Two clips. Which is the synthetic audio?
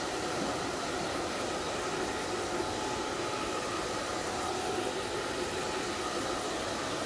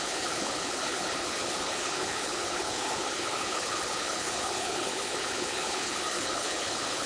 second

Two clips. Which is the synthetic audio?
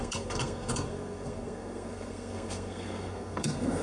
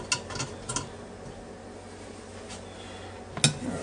first